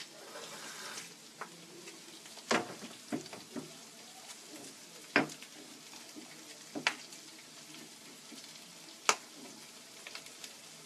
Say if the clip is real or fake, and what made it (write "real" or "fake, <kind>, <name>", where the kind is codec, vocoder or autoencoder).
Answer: real